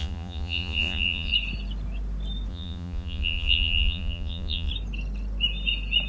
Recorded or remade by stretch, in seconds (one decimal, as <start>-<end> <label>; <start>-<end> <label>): 0.0-1.3 remade; 1.3-2.5 recorded; 2.5-4.7 remade; 4.7-6.1 recorded